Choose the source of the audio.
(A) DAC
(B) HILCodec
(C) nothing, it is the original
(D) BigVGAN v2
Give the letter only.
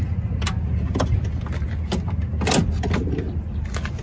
C